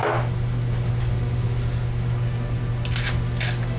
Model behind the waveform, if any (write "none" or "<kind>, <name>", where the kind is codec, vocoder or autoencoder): none